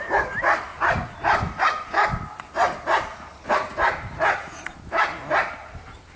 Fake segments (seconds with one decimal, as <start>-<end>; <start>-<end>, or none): 0.0-6.2